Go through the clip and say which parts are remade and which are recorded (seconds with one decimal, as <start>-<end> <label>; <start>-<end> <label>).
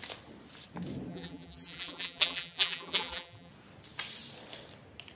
0.0-1.1 recorded; 1.1-3.5 remade; 3.5-5.2 recorded